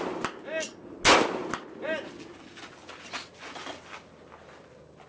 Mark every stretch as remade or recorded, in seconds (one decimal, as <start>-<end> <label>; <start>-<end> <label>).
0.0-5.1 recorded